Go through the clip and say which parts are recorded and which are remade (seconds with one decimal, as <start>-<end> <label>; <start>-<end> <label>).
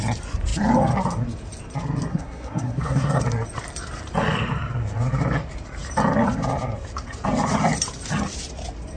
0.0-2.1 recorded; 2.1-3.2 remade; 3.2-9.0 recorded